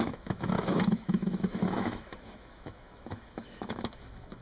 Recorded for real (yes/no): no